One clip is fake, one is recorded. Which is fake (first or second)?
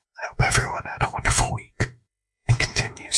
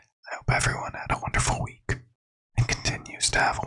first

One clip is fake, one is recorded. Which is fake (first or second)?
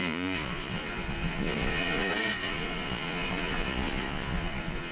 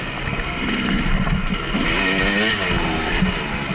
first